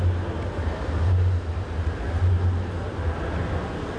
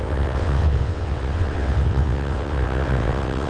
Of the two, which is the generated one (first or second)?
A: second